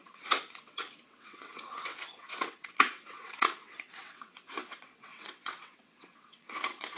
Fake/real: fake